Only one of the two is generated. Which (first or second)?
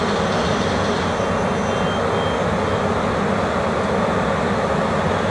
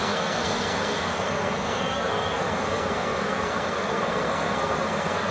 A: second